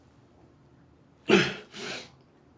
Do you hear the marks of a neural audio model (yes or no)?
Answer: no